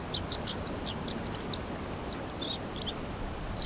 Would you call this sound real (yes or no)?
yes